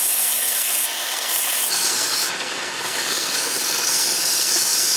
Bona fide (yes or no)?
no